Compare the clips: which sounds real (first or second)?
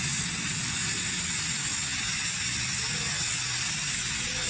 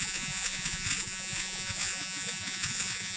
first